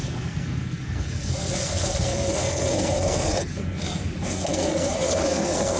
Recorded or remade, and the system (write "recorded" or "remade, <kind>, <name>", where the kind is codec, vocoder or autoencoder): remade, codec, SNAC